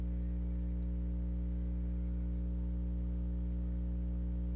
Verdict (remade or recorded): recorded